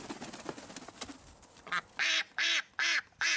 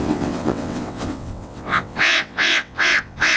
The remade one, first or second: second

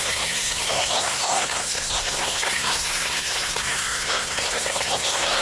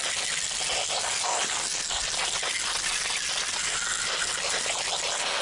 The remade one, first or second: first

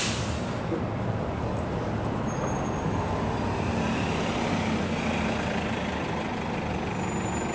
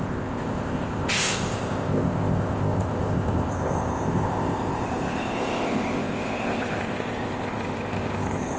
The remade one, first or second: second